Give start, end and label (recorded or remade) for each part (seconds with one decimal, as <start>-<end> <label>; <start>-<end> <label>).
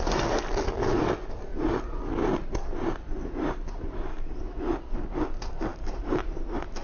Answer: 0.0-6.8 recorded